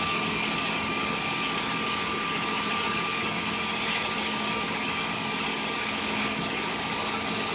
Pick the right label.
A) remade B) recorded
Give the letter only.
A